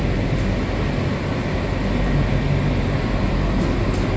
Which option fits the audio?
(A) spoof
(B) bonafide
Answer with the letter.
B